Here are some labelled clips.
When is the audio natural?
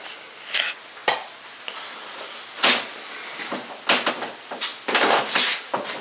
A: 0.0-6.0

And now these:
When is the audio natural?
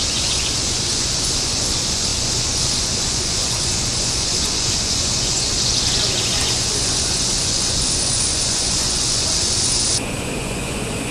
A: none